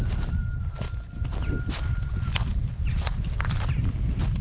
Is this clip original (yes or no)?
yes